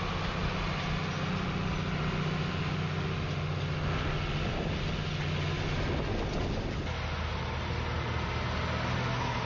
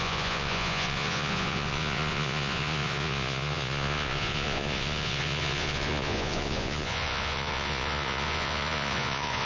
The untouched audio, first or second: first